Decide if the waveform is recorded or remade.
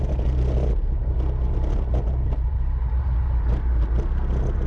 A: recorded